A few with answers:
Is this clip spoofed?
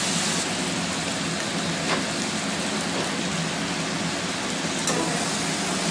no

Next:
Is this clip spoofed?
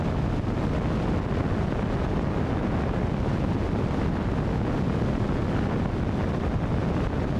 no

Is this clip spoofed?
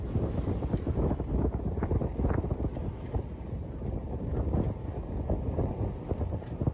no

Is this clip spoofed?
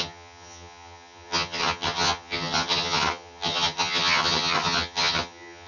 yes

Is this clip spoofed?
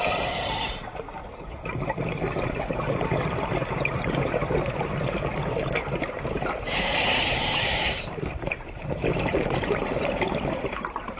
yes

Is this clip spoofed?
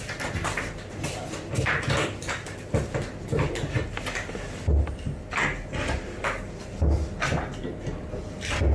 no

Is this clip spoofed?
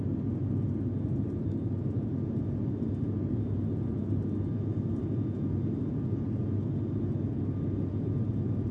no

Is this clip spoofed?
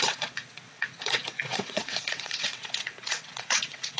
yes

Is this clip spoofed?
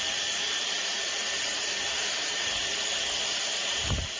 yes